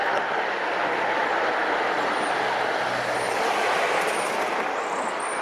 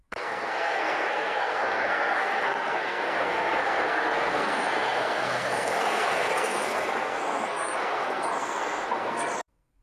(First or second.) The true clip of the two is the first